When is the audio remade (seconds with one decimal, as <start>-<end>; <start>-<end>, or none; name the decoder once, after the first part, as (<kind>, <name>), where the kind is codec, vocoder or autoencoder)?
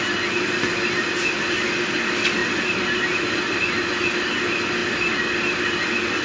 2.4-3.9 (vocoder, BigVGAN v2)